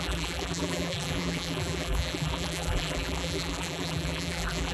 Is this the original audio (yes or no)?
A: no